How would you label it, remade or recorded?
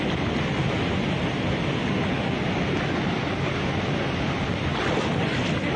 recorded